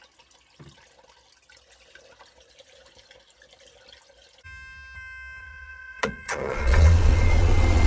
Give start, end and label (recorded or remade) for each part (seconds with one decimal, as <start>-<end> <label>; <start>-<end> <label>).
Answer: 0.0-5.4 recorded; 5.4-7.9 remade